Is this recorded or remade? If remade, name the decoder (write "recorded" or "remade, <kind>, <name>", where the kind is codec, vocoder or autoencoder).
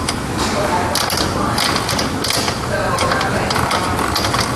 recorded